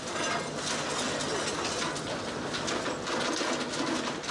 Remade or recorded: recorded